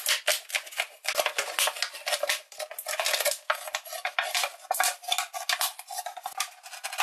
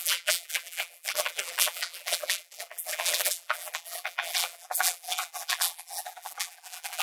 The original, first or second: first